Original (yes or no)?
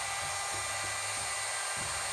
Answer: yes